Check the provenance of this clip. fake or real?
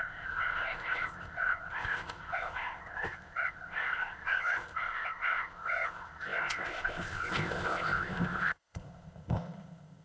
fake